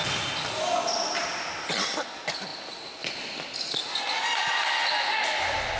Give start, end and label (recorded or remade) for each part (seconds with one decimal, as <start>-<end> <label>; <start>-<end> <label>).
0.0-5.8 recorded